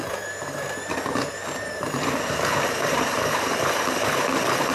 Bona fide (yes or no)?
no